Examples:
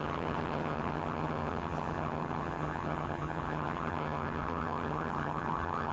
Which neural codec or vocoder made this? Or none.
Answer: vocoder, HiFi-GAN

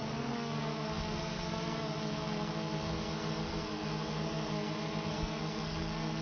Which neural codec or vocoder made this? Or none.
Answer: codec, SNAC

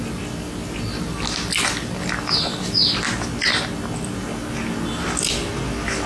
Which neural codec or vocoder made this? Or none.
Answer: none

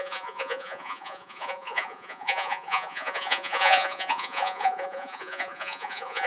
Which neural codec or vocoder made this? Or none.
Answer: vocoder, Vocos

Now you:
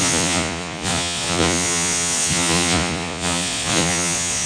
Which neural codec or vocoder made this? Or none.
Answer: vocoder, Vocos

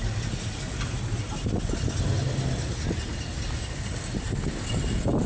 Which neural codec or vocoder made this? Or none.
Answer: none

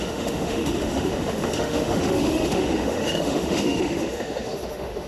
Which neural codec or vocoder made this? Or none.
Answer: autoencoder, DAC-VAE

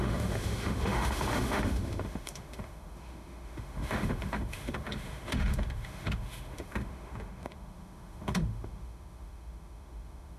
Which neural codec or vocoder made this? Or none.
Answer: autoencoder, DAC-VAE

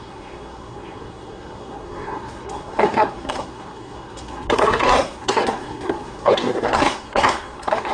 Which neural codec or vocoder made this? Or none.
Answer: codec, SNAC